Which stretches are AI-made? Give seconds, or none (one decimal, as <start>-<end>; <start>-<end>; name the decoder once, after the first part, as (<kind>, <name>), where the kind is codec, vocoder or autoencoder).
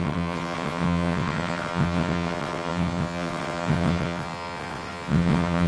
0.0-5.7 (vocoder, WaveNeXt)